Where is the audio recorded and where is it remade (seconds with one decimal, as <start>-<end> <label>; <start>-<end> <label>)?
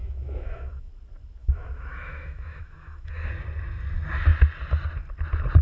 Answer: 0.0-0.9 remade; 0.9-1.4 recorded; 1.4-3.3 remade; 3.3-5.6 recorded